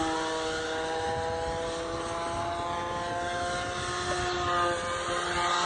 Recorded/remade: recorded